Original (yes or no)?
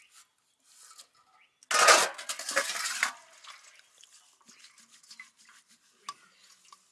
yes